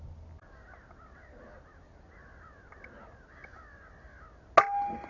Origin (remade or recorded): recorded